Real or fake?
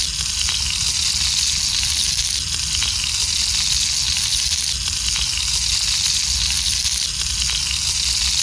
real